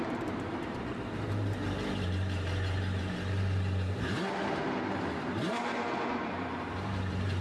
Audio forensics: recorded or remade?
remade